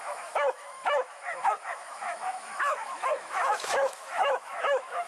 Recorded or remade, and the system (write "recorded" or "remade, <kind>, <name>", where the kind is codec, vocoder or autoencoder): remade, autoencoder, DAC-VAE